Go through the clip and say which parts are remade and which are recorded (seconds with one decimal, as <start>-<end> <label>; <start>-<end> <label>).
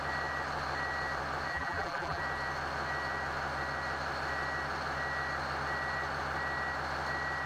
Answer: 0.0-1.5 recorded; 1.5-2.2 remade; 2.2-7.5 recorded